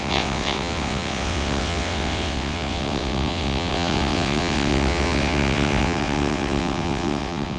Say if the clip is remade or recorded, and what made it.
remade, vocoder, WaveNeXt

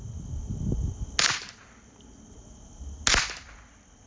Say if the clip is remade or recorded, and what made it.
recorded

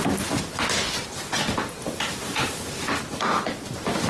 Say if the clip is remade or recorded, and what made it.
recorded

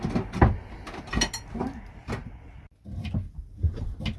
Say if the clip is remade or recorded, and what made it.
recorded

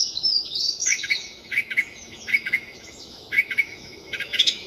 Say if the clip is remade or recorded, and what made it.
remade, autoencoder, DAC-VAE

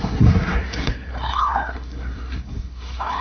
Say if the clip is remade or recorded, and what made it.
remade, codec, SNAC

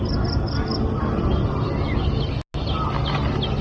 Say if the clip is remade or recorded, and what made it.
recorded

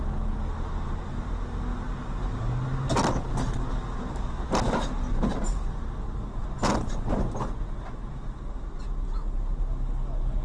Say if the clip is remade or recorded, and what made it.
recorded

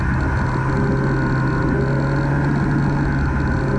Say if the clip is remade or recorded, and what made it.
recorded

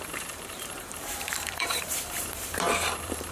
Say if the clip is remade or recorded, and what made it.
remade, vocoder, BigVGAN v2